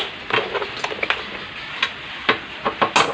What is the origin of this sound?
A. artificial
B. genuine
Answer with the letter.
B